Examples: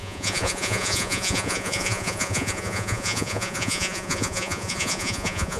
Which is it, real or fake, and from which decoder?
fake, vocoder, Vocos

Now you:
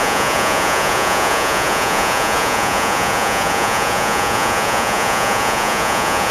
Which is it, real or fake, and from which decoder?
fake, vocoder, Vocos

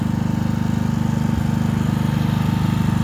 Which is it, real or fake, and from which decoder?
real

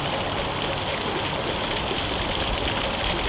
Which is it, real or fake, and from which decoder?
real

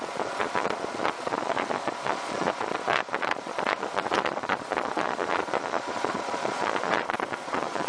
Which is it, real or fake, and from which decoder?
fake, vocoder, Vocos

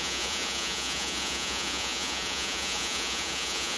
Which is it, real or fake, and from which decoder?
fake, vocoder, Vocos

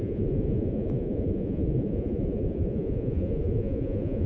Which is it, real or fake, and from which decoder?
fake, vocoder, Vocos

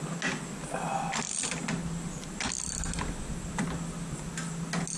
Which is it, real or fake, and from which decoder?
real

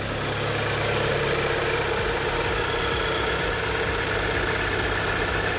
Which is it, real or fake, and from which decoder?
real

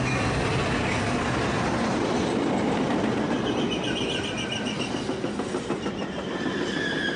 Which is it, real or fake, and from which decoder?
real